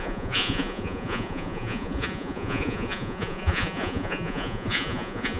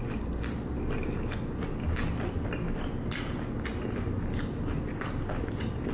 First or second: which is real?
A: second